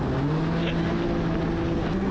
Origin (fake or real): real